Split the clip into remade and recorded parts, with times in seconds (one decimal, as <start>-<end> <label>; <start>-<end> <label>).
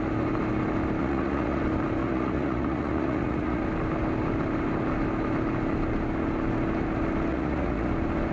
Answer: 0.0-1.0 recorded; 1.0-1.6 remade; 1.6-2.0 recorded; 2.0-3.6 remade; 3.6-7.3 recorded; 7.3-7.9 remade; 7.9-8.3 recorded